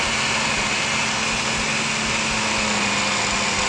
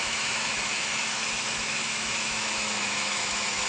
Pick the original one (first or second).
first